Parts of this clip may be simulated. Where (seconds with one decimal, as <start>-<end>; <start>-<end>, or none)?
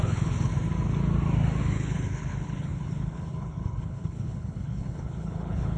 0.0-0.5; 1.6-5.8